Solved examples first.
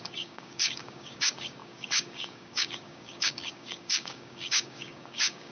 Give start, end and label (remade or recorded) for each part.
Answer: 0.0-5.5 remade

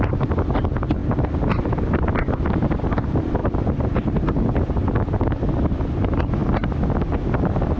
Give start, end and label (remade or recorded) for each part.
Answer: 0.0-7.8 recorded

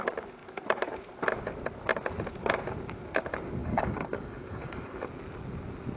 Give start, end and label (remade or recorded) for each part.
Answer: 0.0-3.6 recorded; 3.6-5.1 remade; 5.1-6.0 recorded

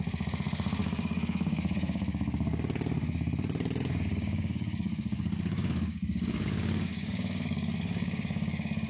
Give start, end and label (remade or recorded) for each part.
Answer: 0.0-0.8 recorded; 0.8-2.6 remade; 2.6-4.1 recorded; 4.1-8.9 remade

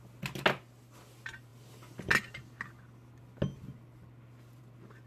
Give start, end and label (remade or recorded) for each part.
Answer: 0.0-5.1 recorded